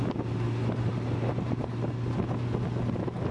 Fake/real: real